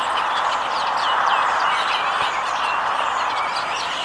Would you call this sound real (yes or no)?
yes